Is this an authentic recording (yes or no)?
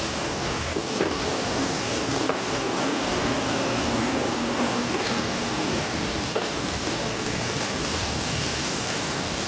no